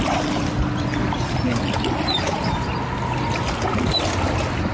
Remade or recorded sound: recorded